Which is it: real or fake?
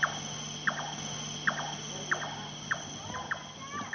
real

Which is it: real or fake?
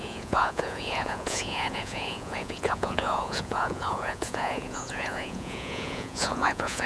fake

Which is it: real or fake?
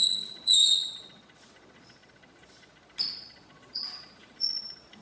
fake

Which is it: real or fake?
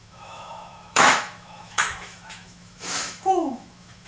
fake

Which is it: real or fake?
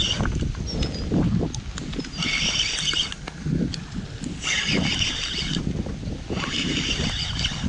real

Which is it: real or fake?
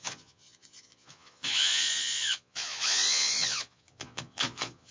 fake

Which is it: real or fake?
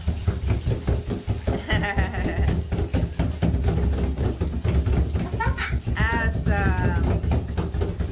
real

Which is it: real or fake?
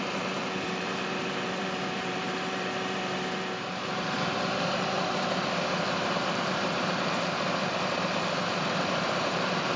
fake